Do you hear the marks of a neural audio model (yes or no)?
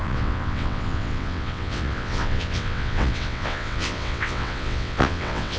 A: yes